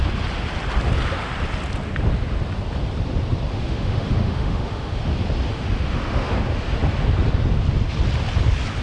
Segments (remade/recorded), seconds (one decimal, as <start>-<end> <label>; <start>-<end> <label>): 0.0-3.5 recorded; 3.5-5.0 remade; 5.0-5.5 recorded; 5.5-6.3 remade; 6.3-8.8 recorded